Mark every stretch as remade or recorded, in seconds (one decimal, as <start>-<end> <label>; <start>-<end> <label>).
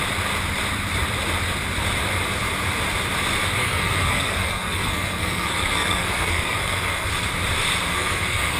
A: 0.0-3.6 recorded; 3.6-7.1 remade; 7.1-7.9 recorded; 7.9-8.6 remade